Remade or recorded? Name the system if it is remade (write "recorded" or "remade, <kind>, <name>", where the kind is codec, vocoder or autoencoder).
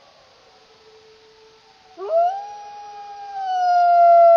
recorded